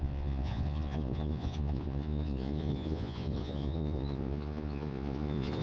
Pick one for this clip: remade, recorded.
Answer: remade